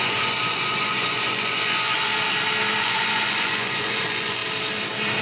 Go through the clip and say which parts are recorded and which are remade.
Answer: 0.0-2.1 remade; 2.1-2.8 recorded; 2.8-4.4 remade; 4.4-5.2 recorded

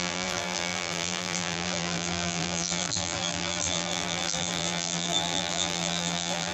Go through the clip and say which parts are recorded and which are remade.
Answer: 0.0-6.5 remade